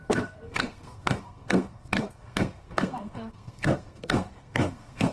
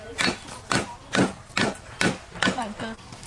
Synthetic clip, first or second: first